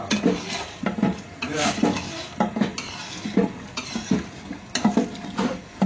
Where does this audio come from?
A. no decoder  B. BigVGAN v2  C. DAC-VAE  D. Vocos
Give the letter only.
A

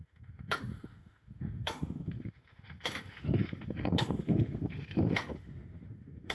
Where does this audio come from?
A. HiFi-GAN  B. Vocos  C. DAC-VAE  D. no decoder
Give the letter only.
C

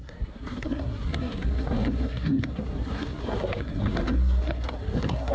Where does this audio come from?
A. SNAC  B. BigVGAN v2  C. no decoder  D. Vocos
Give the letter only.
A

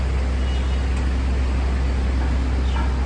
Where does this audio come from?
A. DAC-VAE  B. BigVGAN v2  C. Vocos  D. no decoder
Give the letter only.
D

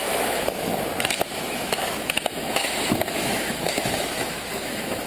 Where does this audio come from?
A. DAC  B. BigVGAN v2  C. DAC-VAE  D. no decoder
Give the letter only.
C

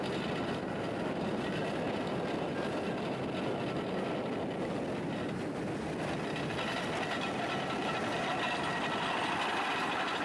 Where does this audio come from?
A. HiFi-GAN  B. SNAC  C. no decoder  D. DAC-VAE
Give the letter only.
C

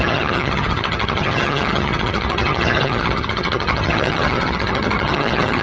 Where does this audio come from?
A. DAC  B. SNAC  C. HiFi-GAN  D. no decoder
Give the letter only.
C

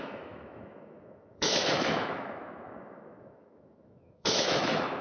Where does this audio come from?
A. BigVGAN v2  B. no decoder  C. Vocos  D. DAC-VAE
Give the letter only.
D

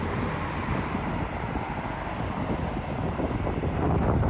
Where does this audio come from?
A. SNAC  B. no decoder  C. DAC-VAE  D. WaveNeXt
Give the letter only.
B